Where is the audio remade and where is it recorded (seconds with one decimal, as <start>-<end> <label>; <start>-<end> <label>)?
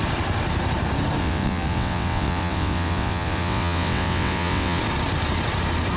0.0-1.2 recorded; 1.2-4.8 remade; 4.8-6.0 recorded